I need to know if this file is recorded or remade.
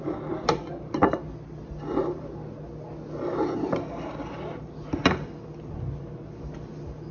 recorded